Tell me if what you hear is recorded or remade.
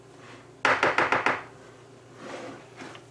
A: recorded